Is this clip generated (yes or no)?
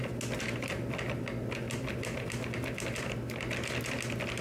no